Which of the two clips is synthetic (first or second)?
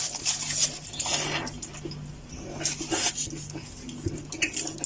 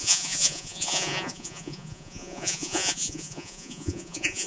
second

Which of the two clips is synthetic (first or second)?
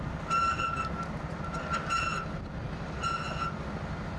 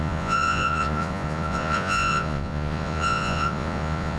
second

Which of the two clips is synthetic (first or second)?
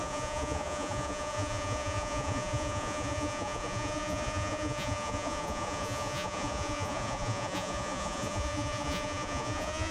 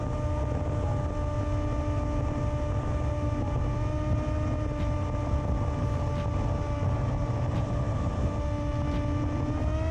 first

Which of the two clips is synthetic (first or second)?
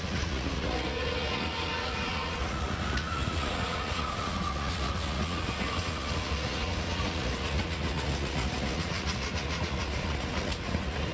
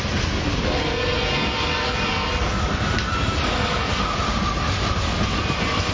first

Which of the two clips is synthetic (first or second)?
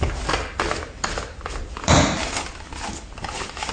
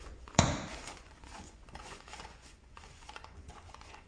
second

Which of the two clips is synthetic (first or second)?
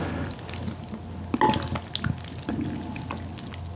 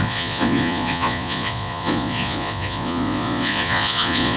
second